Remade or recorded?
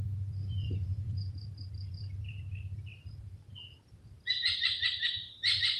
remade